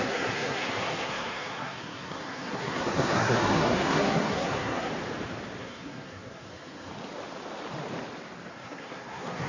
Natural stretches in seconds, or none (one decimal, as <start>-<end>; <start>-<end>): 4.9-5.6; 6.9-8.5